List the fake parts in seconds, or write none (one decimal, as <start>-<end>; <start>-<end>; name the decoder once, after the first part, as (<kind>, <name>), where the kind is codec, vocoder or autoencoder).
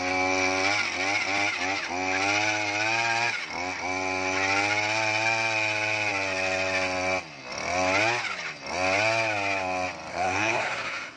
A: 10.1-11.2 (codec, SNAC)